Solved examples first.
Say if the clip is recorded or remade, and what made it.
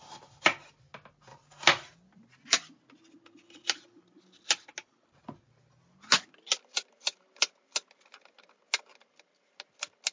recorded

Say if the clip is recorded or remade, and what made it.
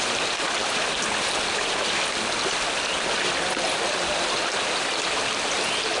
recorded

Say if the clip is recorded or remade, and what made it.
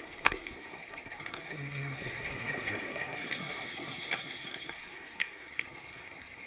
remade, codec, SNAC